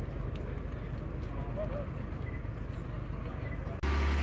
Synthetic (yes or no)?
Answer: no